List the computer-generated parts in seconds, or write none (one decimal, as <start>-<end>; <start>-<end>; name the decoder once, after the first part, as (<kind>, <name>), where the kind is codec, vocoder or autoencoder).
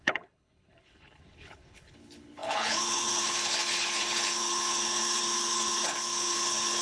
0.0-6.8 (codec, HILCodec)